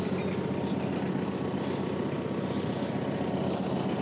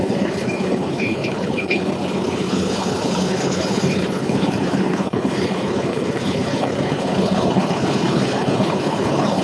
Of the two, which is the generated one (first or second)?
second